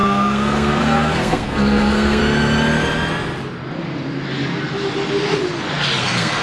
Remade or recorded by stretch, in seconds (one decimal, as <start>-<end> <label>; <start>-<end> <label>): 0.0-2.2 remade; 2.2-6.0 recorded; 6.0-6.4 remade